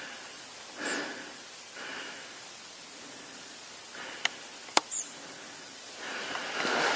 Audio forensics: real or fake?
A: real